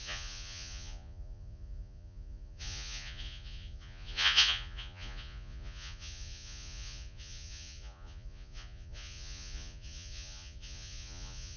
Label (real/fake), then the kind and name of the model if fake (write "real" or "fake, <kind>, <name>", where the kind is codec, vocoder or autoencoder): fake, vocoder, Vocos